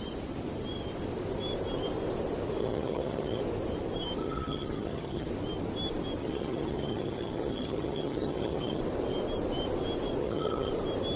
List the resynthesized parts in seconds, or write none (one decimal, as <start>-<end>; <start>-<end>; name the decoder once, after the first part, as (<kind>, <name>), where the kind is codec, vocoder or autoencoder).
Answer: 2.6-3.4 (vocoder, HiFi-GAN); 4.2-5.3; 6.2-8.8; 10.2-10.7